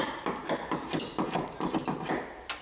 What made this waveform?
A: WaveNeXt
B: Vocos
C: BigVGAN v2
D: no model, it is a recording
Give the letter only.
D